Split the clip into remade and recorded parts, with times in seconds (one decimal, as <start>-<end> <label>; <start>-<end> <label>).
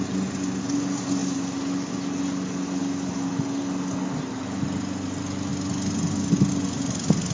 0.0-7.3 recorded